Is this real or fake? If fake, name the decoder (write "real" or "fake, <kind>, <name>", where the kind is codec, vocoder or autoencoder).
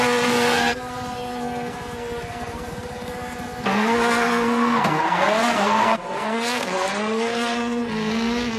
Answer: fake, codec, SNAC